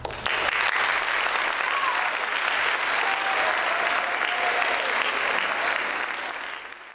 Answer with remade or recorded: recorded